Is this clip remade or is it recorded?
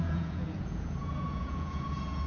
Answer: remade